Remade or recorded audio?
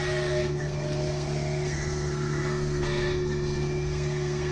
remade